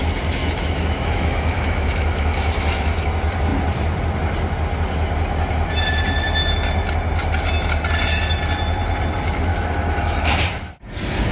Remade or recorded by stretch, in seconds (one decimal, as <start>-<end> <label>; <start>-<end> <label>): 0.0-0.4 recorded; 0.4-3.1 remade; 3.1-9.5 recorded; 9.5-10.3 remade; 10.3-11.3 recorded